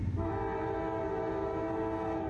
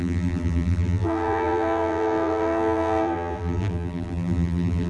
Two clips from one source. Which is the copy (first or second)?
second